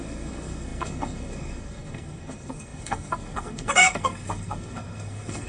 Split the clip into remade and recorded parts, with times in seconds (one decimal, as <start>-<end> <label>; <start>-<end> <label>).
0.0-5.5 remade